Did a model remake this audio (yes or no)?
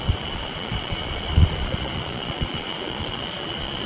yes